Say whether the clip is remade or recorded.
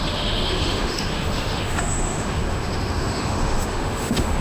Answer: remade